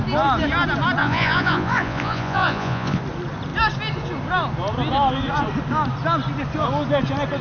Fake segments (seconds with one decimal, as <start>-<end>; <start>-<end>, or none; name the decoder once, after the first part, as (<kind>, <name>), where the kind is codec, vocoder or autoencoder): 1.0-3.0 (vocoder, Vocos)